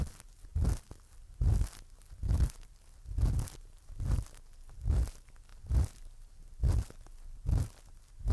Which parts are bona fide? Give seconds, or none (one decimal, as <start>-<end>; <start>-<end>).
0.0-8.3